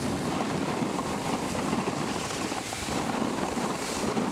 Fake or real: real